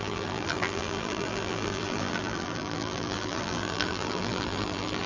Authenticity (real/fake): fake